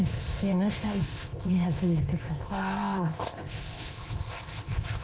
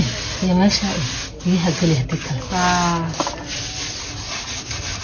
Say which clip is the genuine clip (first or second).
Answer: second